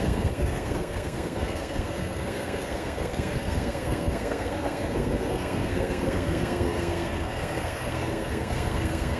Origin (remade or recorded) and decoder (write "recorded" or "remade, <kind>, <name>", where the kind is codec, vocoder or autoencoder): remade, codec, SNAC